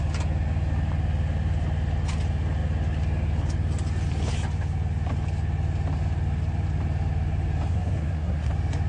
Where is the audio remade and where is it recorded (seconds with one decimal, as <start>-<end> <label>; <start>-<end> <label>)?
0.0-7.7 recorded; 7.7-8.5 remade; 8.5-8.9 recorded